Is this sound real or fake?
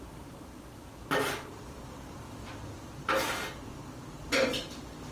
fake